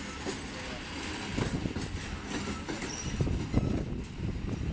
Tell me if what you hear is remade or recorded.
recorded